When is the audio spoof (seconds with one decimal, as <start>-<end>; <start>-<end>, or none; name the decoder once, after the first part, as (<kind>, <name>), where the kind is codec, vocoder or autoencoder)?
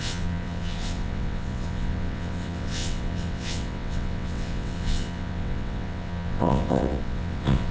0.0-7.7 (vocoder, WaveNeXt)